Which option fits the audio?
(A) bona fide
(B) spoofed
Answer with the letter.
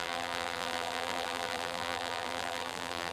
B